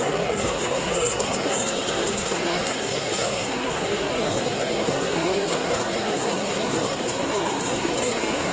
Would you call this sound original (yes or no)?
no